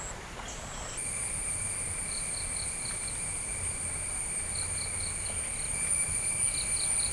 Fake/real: real